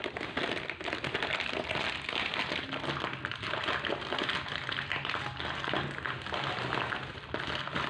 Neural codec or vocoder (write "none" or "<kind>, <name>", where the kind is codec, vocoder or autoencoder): none